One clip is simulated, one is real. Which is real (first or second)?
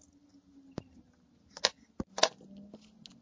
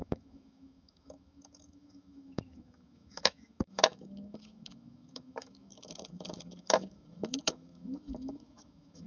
first